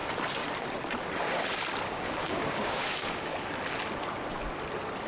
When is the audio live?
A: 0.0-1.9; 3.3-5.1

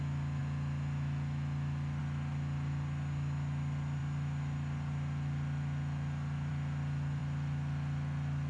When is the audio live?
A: 0.0-8.5

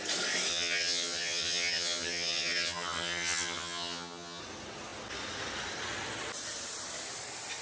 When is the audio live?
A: 0.0-0.5; 4.4-7.6

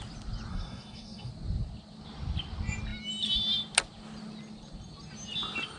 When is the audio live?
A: 0.0-0.5; 1.3-5.8

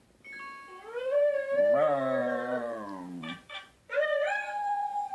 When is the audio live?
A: 0.0-2.2

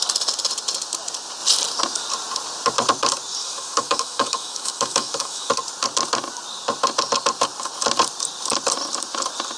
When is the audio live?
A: 0.0-3.4; 5.5-9.6